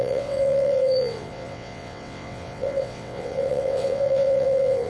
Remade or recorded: remade